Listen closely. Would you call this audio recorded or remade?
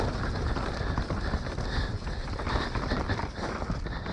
recorded